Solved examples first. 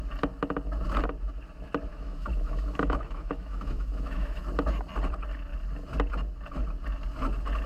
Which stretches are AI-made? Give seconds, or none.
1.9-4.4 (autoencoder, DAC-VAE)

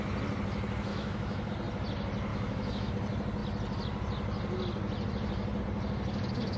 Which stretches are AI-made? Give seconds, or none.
0.9-1.5 (autoencoder, DAC-VAE); 2.3-2.9

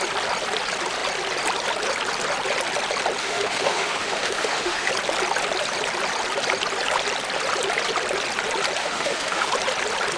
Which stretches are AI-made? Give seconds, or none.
3.2-4.9 (autoencoder, DAC-VAE); 8.8-9.5

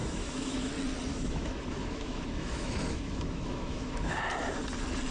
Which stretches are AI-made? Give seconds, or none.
0.0-0.7 (autoencoder, DAC-VAE); 1.1-4.2

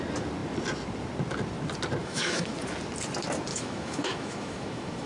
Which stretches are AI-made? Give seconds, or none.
2.0-2.5 (autoencoder, DAC-VAE); 3.5-5.1

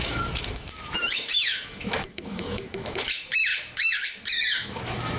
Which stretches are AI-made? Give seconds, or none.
0.0-5.2 (autoencoder, DAC-VAE)

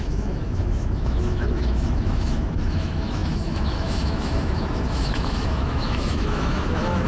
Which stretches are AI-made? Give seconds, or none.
0.0-7.1 (autoencoder, DAC-VAE)